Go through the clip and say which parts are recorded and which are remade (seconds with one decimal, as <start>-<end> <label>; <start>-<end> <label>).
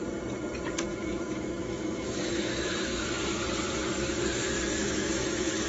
0.0-0.9 recorded; 0.9-3.4 remade; 3.4-4.7 recorded; 4.7-5.7 remade